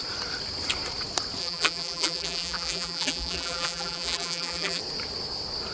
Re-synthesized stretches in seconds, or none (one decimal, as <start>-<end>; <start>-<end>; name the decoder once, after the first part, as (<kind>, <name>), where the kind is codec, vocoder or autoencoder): 1.4-4.8 (vocoder, BigVGAN v2)